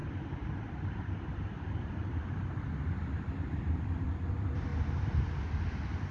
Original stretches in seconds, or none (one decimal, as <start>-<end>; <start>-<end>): none